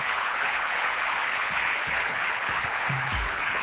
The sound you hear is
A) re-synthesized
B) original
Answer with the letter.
A